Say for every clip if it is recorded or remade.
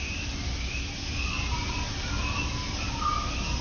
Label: recorded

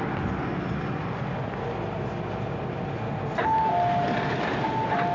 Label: recorded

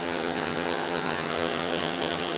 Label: remade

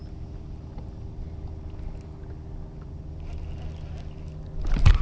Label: recorded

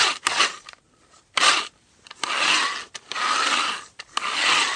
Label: recorded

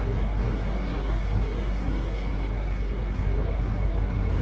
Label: remade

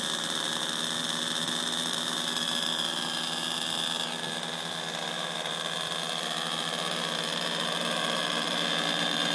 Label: recorded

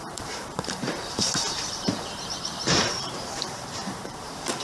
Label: remade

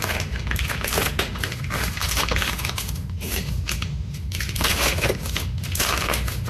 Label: remade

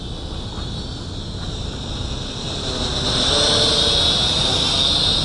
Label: recorded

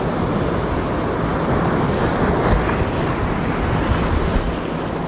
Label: recorded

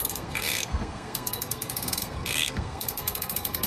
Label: remade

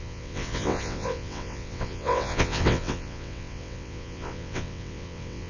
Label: remade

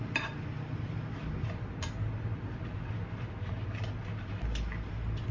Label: recorded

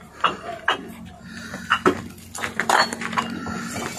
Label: recorded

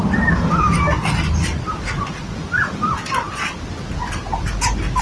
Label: recorded